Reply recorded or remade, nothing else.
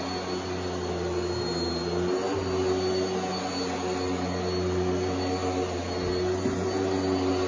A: recorded